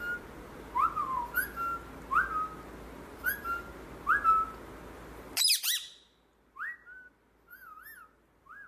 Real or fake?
real